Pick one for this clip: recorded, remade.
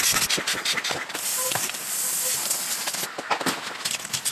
recorded